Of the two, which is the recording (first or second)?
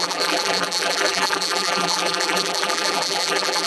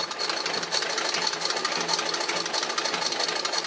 second